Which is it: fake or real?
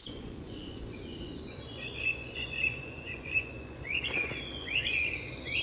fake